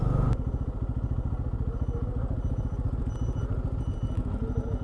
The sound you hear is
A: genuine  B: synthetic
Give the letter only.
A